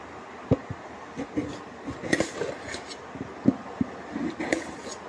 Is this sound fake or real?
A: real